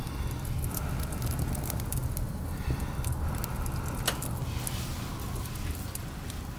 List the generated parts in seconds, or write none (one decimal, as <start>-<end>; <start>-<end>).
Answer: none